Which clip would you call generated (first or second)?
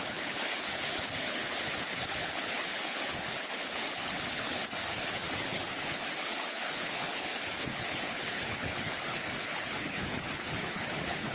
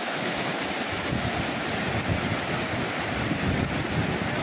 first